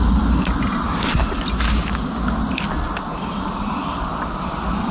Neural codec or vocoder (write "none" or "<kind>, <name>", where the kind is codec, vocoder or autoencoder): none